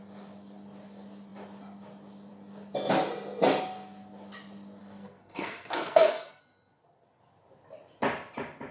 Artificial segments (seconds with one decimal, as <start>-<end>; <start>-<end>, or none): 4.8-6.4